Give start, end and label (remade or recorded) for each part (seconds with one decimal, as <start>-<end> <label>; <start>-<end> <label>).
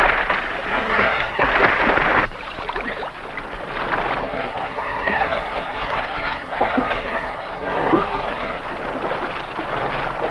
0.0-0.7 recorded; 0.7-1.5 remade; 1.5-4.2 recorded; 4.2-8.6 remade; 8.6-10.3 recorded